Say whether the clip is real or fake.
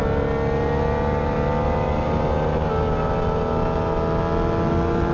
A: real